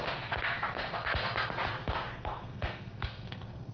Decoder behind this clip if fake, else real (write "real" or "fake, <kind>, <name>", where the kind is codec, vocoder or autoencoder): fake, codec, SNAC